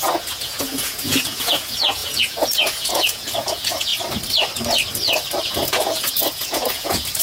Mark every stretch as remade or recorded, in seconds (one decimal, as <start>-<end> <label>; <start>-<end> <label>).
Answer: 0.0-3.9 remade; 3.9-5.5 recorded; 5.5-7.2 remade